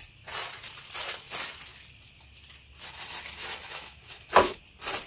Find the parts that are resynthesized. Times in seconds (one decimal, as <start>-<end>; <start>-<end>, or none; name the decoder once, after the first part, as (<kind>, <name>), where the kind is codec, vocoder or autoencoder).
3.4-4.6 (autoencoder, DAC-VAE)